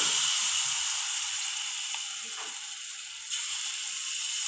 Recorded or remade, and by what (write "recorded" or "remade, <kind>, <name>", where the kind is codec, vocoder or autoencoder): recorded